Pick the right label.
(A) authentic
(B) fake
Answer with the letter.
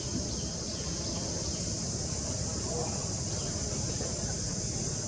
A